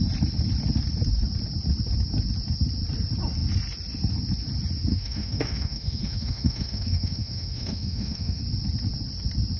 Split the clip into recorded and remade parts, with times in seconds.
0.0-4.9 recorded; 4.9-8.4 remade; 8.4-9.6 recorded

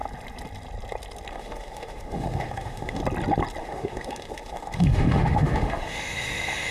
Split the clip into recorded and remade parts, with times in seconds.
0.0-1.3 recorded; 1.3-3.0 remade; 3.0-3.6 recorded; 3.6-6.7 remade